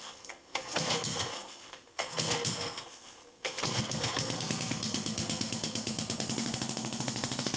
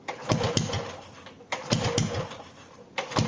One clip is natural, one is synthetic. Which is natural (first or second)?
second